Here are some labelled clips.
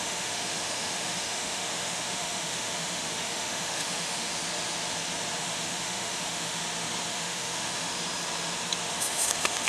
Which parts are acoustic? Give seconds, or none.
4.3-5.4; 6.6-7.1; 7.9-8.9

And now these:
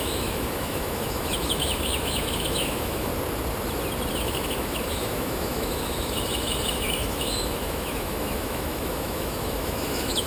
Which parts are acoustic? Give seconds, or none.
3.1-4.1